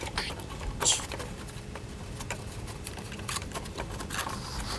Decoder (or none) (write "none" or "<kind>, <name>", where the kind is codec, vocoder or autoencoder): none